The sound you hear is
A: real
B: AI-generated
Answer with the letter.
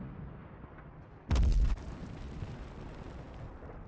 A